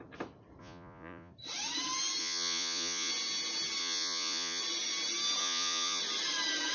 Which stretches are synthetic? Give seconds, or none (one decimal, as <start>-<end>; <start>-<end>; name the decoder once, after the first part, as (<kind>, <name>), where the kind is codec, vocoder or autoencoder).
0.6-1.3 (vocoder, Vocos); 2.2-3.1; 3.8-4.6; 5.4-6.0

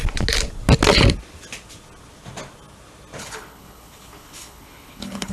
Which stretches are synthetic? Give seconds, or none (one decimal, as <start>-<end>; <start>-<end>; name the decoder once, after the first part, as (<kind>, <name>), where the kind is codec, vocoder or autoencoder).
3.2-5.3 (codec, HILCodec)